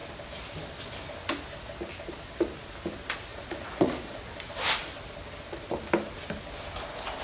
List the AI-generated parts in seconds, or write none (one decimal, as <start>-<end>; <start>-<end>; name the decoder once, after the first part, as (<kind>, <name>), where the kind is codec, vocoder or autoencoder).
3.3-4.3 (vocoder, Vocos)